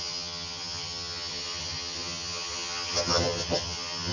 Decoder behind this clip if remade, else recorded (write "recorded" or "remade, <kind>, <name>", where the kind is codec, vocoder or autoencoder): remade, vocoder, HiFi-GAN